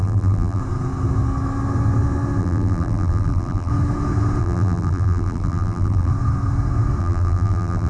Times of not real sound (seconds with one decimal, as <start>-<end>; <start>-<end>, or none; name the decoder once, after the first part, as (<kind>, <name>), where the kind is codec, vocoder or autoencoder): 0.0-0.6 (vocoder, BigVGAN v2); 2.4-3.7; 4.4-6.1; 7.0-7.9